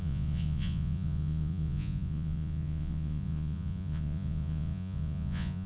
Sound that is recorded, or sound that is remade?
remade